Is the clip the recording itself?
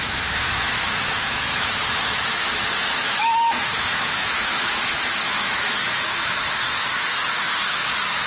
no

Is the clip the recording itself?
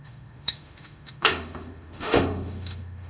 no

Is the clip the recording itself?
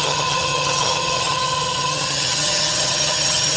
no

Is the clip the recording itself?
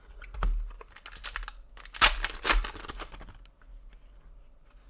yes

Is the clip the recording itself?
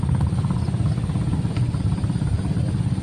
yes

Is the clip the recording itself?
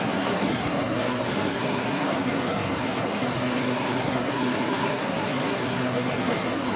no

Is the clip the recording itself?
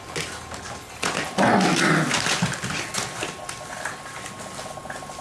yes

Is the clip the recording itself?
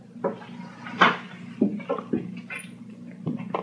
yes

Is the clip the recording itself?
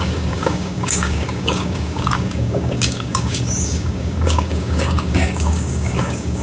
no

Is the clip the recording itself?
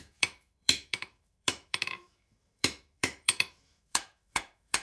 no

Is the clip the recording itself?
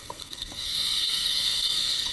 no